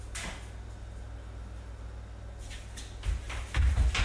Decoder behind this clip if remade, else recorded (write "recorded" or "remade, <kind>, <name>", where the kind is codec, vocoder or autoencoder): recorded